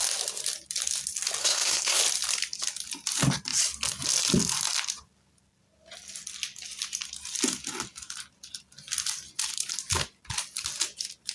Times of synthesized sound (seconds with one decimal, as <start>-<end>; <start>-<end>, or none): 1.4-2.0

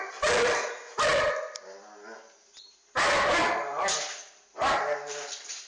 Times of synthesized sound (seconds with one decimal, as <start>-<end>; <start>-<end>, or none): none